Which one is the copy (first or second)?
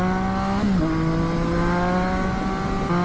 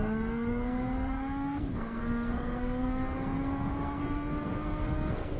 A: second